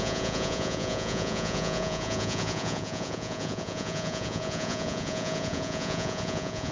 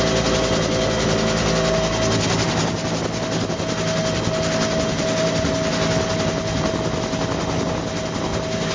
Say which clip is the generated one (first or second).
first